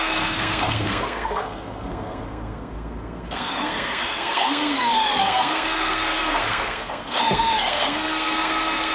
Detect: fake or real fake